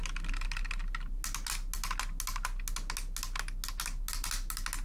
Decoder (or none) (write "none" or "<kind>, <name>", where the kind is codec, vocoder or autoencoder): none